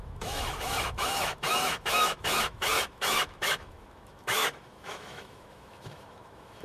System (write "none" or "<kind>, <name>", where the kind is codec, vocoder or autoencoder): autoencoder, DAC-VAE